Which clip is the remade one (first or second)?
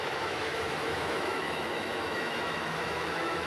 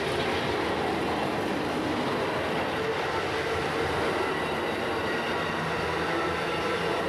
first